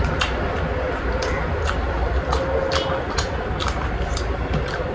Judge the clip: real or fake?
real